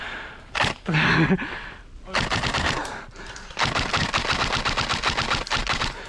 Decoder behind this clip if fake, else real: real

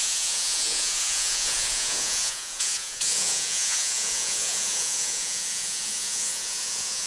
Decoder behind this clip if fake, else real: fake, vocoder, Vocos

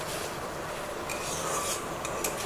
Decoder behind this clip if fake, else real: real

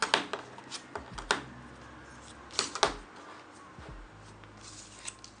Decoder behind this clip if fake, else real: real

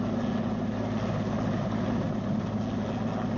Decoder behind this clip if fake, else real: real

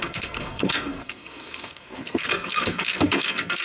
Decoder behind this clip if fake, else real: fake, codec, SNAC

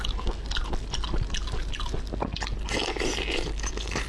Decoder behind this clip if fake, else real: real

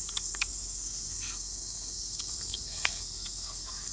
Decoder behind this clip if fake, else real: fake, codec, SNAC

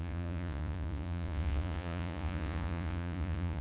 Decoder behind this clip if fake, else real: fake, vocoder, Vocos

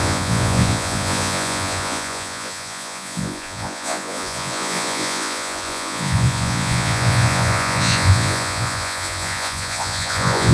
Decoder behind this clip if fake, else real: fake, vocoder, Vocos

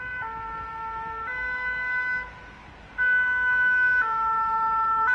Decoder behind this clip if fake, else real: real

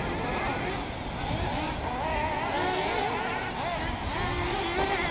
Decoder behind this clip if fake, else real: real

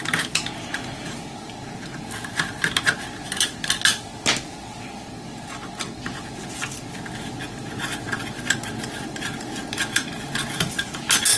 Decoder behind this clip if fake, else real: real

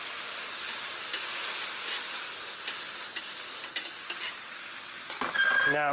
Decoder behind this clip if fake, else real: real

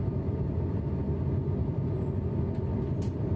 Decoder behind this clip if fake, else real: real